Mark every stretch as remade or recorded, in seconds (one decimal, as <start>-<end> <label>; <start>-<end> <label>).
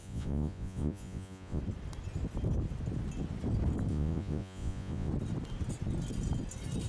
0.0-1.6 remade; 1.6-3.9 recorded; 3.9-5.1 remade; 5.1-6.9 recorded